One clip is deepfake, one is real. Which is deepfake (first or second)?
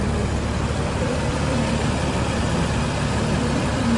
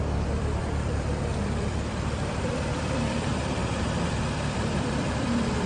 second